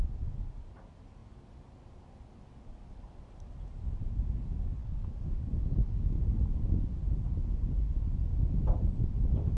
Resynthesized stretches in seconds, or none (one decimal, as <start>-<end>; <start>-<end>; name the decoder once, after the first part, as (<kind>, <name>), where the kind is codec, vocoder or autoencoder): 4.8-6.4 (codec, DAC)